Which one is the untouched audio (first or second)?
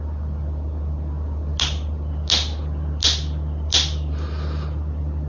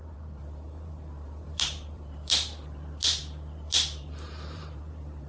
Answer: first